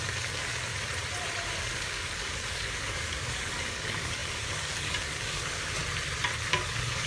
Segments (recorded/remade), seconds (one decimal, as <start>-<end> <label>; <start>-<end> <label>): 0.0-0.7 remade; 0.7-1.6 recorded; 1.6-5.8 remade; 5.8-6.5 recorded; 6.5-7.1 remade